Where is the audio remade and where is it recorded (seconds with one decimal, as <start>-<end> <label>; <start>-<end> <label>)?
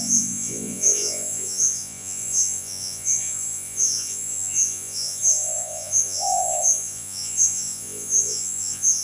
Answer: 0.0-9.0 remade